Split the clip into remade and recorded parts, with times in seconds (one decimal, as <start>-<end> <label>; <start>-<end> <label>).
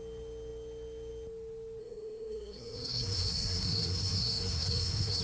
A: 0.0-1.8 recorded; 1.8-5.2 remade